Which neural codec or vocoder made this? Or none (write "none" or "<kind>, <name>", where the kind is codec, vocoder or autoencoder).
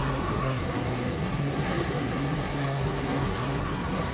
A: codec, SNAC